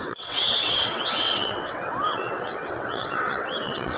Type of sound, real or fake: fake